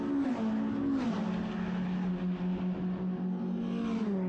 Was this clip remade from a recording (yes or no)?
no